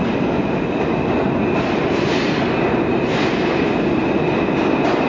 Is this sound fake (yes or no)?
no